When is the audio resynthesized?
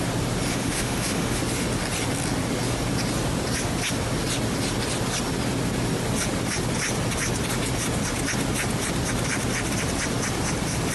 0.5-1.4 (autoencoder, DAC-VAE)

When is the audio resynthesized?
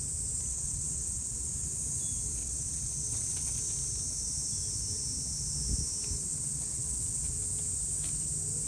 0.5-1.5 (vocoder, WaveNeXt); 2.4-3.6; 6.3-7.4